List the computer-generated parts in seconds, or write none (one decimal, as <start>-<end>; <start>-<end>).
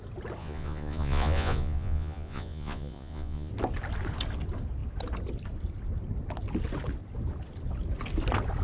0.4-3.5